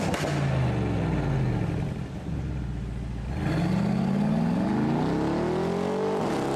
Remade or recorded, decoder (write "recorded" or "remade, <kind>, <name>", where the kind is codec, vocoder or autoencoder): recorded